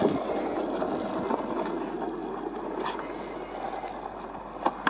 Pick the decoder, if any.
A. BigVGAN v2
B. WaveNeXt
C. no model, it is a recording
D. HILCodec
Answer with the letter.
C